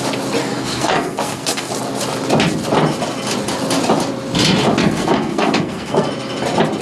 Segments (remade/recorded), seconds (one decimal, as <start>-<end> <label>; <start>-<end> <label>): 0.0-0.4 recorded; 0.4-1.7 remade; 1.7-4.8 recorded; 4.8-6.1 remade; 6.1-6.8 recorded